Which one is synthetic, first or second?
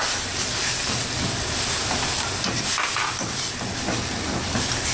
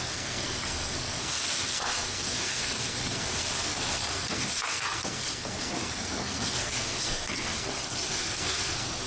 second